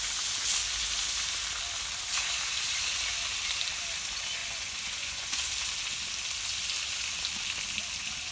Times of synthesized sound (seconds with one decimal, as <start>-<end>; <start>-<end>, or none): 4.4-5.5